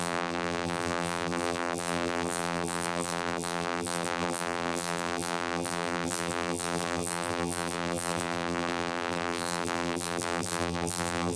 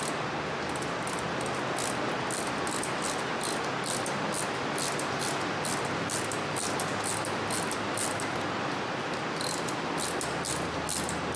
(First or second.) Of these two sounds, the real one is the second